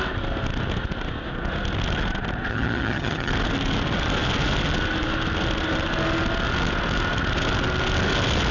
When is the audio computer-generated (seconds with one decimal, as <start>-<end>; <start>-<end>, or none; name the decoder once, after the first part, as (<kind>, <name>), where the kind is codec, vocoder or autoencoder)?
2.5-3.3 (vocoder, HiFi-GAN)